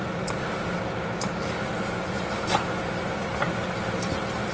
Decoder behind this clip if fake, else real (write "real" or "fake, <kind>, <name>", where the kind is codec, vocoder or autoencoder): real